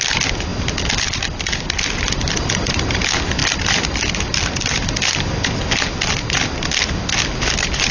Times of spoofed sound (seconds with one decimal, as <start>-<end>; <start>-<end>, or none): none